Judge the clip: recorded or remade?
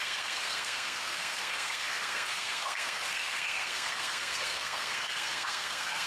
remade